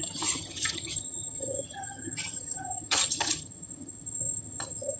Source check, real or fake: fake